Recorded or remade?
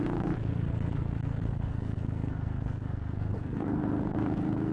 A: remade